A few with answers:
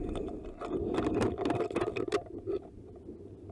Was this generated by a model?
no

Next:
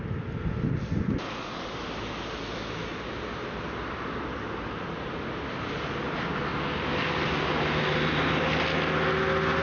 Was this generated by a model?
no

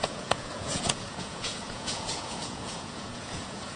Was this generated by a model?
yes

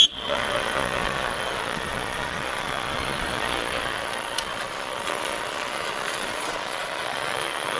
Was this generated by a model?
yes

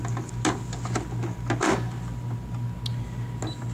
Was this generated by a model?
no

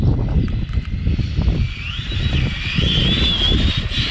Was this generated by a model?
no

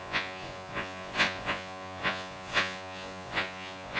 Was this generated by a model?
yes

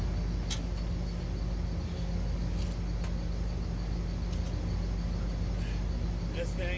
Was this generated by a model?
no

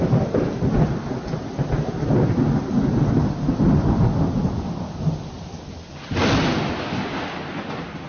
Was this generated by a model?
no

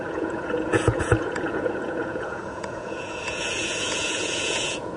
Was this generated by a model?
yes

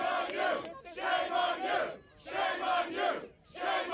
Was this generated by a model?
no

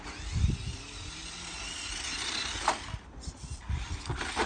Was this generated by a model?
no